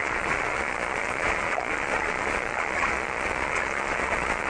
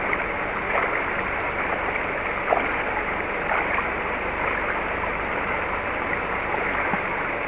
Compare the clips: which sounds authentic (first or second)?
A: second